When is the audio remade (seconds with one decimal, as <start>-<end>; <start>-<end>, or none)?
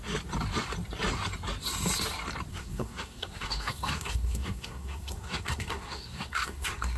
2.5-7.0